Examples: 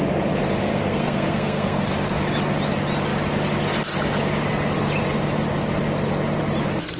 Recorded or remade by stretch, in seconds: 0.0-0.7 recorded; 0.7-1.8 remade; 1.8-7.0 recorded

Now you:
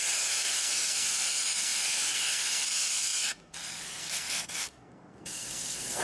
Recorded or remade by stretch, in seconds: 0.0-6.0 remade

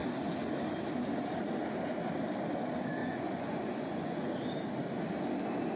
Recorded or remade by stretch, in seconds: 0.0-3.0 recorded; 3.0-4.3 remade; 4.3-5.8 recorded